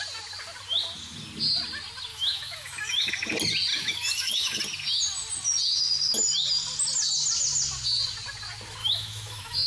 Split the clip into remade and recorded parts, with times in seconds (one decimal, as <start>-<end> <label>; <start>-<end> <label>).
0.0-2.1 recorded; 2.1-3.1 remade; 3.1-3.7 recorded; 3.7-4.6 remade; 4.6-8.8 recorded; 8.8-9.7 remade